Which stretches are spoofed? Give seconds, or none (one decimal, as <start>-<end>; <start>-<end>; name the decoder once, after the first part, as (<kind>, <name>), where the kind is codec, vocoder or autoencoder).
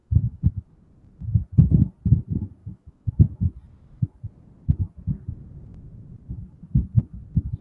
0.0-0.5 (autoencoder, DAC-VAE); 2.6-3.1